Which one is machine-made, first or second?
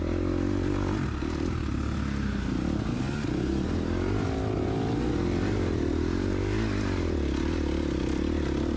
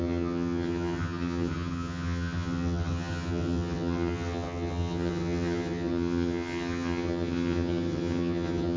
second